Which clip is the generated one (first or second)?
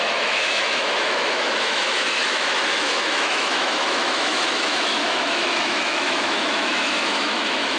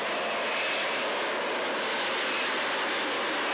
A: first